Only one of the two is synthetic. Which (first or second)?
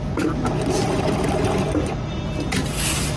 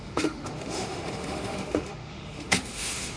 second